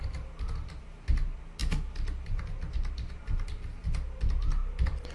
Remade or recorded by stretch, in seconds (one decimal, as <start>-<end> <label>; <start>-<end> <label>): 0.0-5.1 recorded